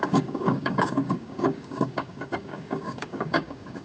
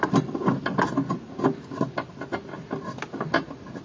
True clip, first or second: second